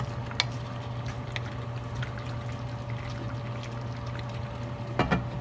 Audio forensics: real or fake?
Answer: real